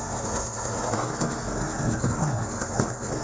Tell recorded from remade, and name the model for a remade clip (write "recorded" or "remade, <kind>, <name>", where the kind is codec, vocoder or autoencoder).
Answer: remade, codec, SNAC